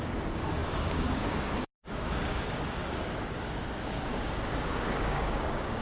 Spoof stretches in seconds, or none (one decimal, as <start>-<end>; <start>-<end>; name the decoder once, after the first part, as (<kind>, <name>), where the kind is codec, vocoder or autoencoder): 0.0-5.8 (codec, DAC)